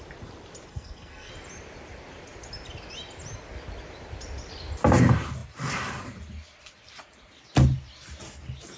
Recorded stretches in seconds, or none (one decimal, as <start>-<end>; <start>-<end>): 0.0-0.7; 1.3-8.8